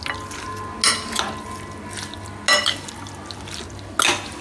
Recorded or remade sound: recorded